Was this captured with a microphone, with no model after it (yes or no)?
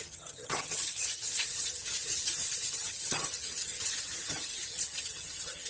no